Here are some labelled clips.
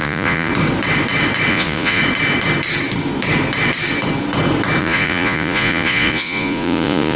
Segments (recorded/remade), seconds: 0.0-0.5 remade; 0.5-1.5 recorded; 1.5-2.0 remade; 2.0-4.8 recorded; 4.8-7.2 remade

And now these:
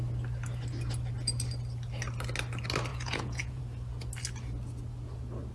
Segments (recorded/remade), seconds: 0.0-2.9 recorded; 2.9-3.6 remade; 3.6-5.5 recorded

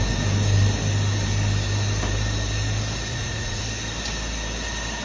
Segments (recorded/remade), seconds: 0.0-3.1 recorded; 3.1-3.6 remade; 3.6-5.0 recorded

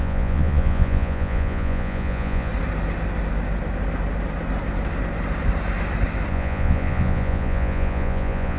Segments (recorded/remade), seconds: 0.0-2.5 remade; 2.5-6.3 recorded; 6.3-8.6 remade

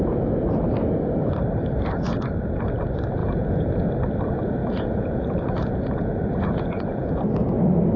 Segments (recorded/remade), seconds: 0.0-3.2 recorded; 3.2-3.9 remade; 3.9-4.6 recorded; 4.6-7.2 remade; 7.2-8.0 recorded